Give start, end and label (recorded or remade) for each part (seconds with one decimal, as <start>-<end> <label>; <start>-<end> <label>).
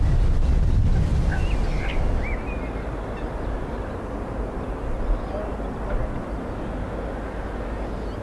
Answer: 0.0-8.2 recorded